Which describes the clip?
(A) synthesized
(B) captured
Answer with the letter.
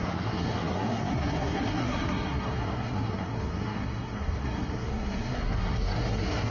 A